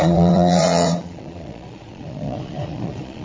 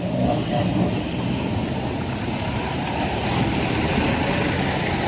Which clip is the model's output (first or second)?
first